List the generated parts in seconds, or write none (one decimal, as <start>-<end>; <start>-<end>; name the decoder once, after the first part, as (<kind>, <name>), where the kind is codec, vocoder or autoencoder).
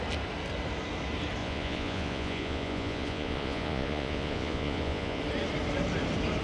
1.4-5.2 (vocoder, Vocos)